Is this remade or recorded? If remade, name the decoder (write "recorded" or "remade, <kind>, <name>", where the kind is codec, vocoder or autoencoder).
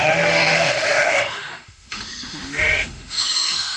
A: remade, autoencoder, DAC-VAE